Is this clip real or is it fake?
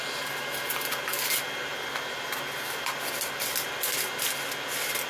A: real